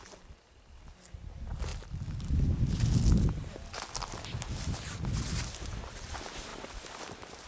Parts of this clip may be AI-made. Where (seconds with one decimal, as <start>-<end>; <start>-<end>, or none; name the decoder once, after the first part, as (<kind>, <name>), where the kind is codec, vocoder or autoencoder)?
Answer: none